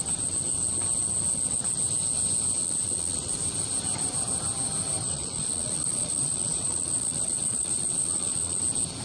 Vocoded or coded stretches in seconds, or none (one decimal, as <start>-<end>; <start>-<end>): 2.6-3.3; 5.0-8.6